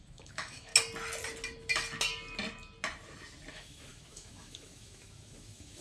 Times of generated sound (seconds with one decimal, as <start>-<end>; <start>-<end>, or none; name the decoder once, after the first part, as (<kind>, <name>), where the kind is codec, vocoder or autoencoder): 0.0-0.7 (autoencoder, DAC-VAE); 3.5-5.8